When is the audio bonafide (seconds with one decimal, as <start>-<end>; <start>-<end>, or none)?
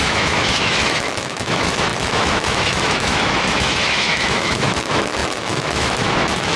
none